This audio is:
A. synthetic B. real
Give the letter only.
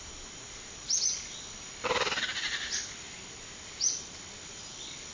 B